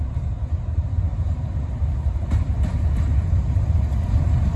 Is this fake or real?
fake